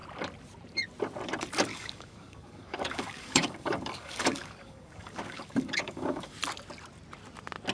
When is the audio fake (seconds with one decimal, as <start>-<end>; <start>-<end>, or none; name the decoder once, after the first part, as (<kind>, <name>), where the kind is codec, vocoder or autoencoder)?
1.7-6.3 (codec, DAC)